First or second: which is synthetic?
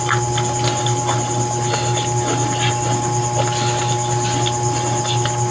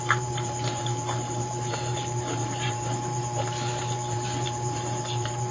second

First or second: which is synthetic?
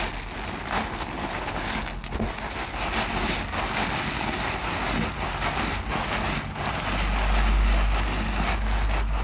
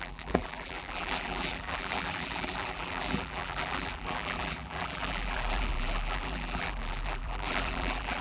second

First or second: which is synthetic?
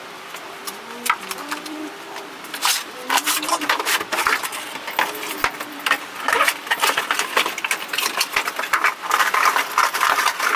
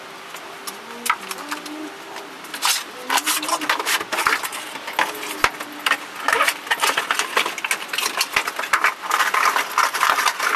first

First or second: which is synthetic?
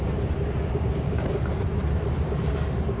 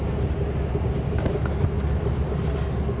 first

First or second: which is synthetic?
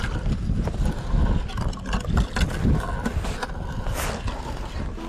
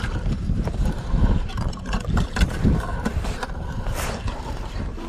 second